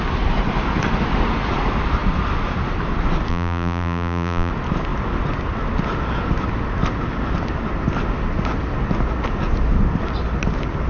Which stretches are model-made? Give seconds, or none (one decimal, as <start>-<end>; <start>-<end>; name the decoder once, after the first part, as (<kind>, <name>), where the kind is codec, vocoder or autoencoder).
3.3-4.5 (vocoder, BigVGAN v2)

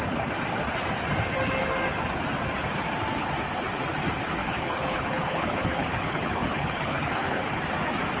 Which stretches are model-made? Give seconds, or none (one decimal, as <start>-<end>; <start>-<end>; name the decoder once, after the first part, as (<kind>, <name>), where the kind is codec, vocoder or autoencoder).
4.4-7.6 (codec, HILCodec)

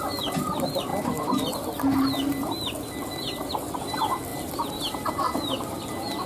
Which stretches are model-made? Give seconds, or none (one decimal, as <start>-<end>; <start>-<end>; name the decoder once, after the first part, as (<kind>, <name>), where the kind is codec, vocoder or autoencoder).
4.3-5.1 (vocoder, BigVGAN v2)